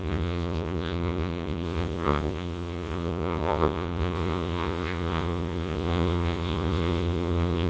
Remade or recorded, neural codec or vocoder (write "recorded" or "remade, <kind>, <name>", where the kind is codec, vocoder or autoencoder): remade, vocoder, Vocos